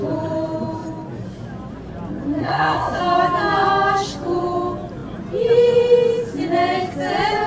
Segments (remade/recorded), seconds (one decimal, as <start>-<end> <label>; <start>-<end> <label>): 0.0-2.4 recorded; 2.4-3.0 remade; 3.0-7.5 recorded